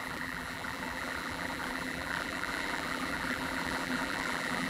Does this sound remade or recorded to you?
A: remade